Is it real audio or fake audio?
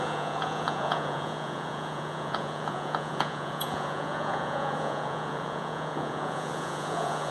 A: fake